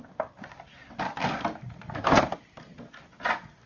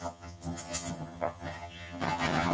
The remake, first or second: second